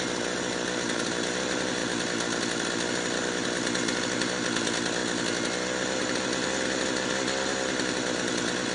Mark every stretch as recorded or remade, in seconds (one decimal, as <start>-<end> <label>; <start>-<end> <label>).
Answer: 0.0-8.7 recorded